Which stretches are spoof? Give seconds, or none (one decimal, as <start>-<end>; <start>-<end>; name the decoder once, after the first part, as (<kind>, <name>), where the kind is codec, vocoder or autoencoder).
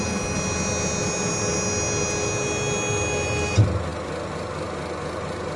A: none